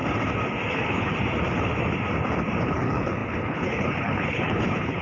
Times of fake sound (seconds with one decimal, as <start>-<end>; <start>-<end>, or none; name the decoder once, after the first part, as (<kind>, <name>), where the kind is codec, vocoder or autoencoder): 0.7-1.1 (codec, HILCodec); 2.6-5.0